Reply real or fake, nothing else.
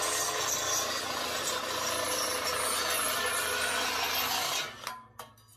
real